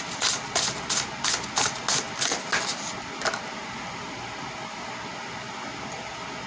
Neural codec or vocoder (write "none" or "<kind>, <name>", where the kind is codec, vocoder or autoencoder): none